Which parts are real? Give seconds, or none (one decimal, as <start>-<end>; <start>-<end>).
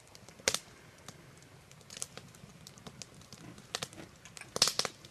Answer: 0.0-5.1